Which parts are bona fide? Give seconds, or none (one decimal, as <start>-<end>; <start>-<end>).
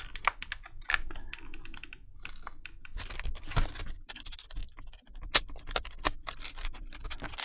0.0-7.4